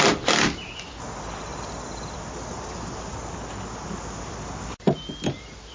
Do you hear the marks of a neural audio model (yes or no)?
no